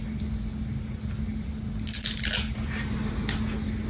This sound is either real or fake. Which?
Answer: real